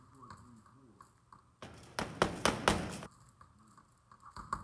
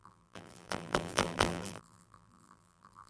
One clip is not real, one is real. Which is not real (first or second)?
second